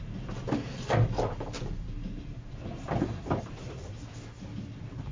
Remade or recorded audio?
remade